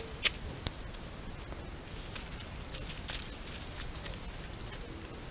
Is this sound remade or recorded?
recorded